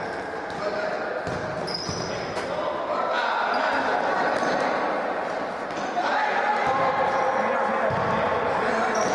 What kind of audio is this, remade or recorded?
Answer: recorded